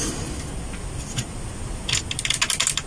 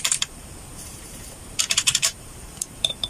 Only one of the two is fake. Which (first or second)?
second